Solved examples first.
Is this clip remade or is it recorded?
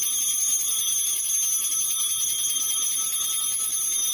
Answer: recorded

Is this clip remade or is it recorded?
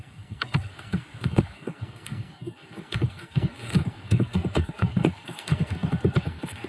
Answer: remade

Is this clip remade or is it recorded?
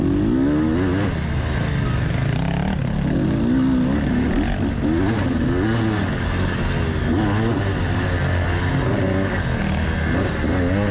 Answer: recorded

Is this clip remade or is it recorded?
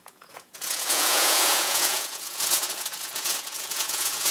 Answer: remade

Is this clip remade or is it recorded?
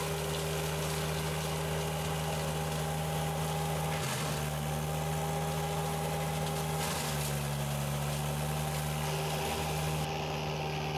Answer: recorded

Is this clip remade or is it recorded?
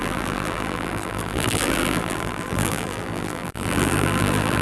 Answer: remade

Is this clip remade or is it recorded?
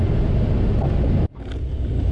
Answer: recorded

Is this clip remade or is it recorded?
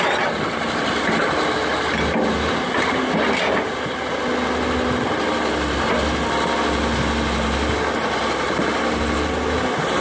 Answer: recorded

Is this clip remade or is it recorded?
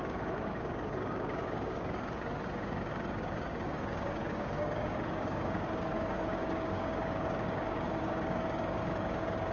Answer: remade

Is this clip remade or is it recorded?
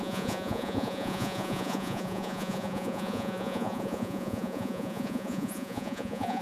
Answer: remade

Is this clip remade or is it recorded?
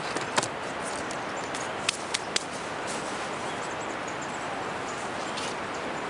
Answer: recorded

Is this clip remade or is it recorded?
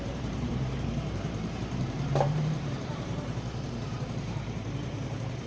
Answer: remade